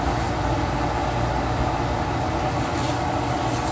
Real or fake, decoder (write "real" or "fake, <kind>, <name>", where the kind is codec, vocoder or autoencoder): fake, vocoder, BigVGAN v2